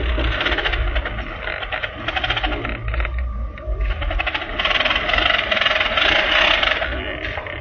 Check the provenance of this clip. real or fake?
real